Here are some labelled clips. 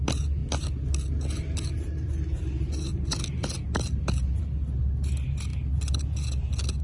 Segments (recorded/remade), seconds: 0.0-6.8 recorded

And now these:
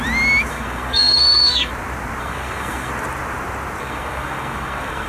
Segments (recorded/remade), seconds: 0.0-0.5 recorded; 0.5-1.7 remade; 1.7-2.2 recorded; 2.2-2.9 remade; 2.9-3.8 recorded; 3.8-5.1 remade